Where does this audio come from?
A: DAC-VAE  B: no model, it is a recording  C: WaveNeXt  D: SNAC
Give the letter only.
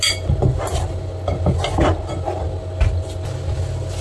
B